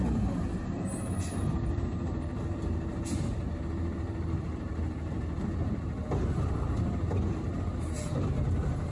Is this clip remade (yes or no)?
yes